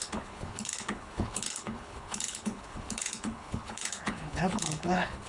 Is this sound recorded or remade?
remade